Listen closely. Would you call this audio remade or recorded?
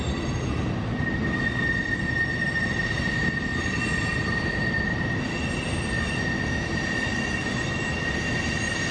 recorded